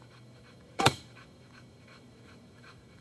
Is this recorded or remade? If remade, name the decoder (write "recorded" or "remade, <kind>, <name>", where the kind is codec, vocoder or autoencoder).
remade, autoencoder, DAC-VAE